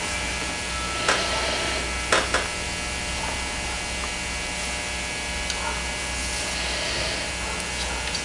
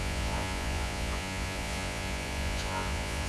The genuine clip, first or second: first